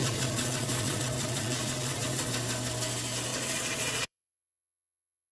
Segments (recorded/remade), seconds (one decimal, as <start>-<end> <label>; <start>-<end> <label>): 0.0-2.3 remade; 2.3-3.3 recorded; 3.3-5.3 remade